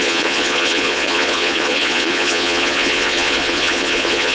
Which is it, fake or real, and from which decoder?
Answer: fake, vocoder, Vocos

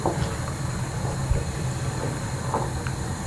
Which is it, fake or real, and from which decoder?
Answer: real